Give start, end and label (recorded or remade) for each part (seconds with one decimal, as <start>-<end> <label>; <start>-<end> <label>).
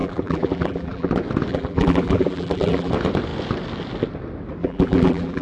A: 0.0-1.1 remade; 1.1-1.5 recorded; 1.5-2.9 remade; 2.9-4.6 recorded; 4.6-5.4 remade